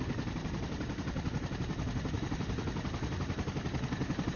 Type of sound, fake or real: real